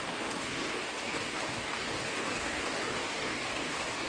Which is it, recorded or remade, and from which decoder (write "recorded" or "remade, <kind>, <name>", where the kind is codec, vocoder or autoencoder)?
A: remade, codec, DAC